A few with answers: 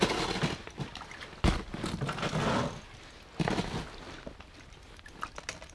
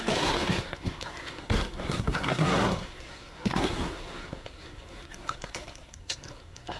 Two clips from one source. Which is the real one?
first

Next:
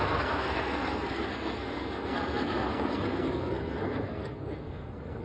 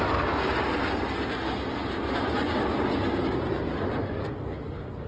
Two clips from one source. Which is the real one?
second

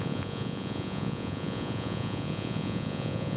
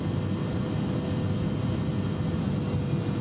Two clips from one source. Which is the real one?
second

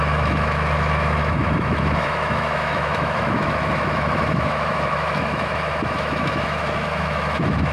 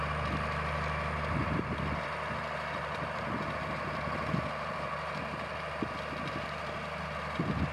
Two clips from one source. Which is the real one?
second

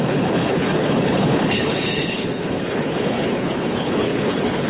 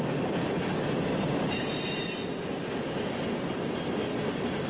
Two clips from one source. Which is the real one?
second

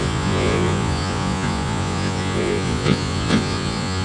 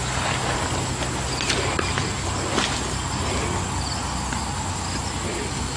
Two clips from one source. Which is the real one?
second